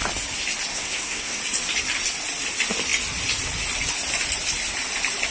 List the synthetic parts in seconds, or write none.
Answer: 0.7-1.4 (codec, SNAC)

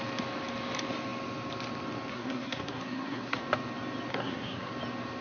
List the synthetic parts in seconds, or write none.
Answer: 2.1-3.4 (codec, SNAC); 4.1-4.7

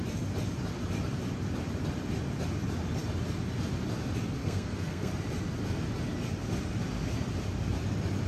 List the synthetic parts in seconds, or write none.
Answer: 4.4-5.1 (codec, SNAC)